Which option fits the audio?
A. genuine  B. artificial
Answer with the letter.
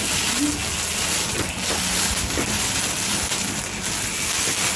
A